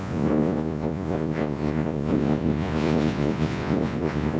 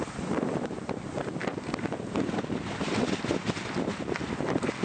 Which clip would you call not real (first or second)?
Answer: first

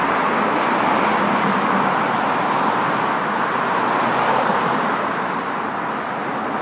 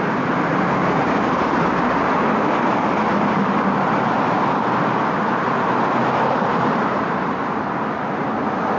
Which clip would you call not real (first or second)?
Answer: second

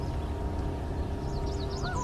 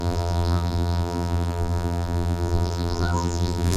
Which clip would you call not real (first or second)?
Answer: second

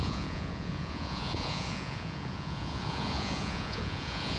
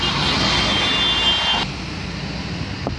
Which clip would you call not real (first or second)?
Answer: first